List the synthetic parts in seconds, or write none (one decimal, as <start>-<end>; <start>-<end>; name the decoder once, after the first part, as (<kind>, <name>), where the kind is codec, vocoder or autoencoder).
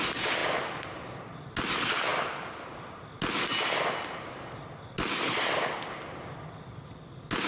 none